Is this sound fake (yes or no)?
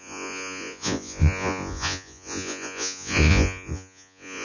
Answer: yes